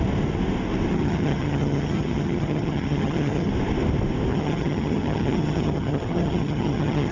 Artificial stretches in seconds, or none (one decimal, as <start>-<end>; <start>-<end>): 0.9-3.5; 4.3-7.1